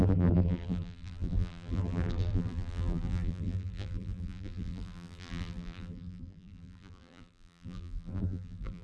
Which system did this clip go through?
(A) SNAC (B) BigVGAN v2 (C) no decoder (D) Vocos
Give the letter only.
B